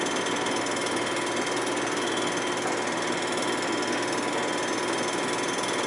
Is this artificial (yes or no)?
no